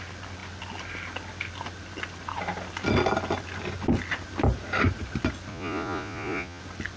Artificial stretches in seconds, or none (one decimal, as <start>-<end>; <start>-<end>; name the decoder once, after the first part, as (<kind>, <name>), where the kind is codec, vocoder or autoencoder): 5.5-6.6 (vocoder, Vocos)

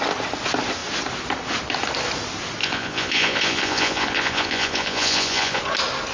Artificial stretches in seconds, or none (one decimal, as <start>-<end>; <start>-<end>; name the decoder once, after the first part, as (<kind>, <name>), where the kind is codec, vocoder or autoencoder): 2.6-5.6 (vocoder, Vocos)